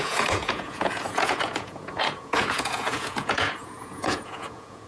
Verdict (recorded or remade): remade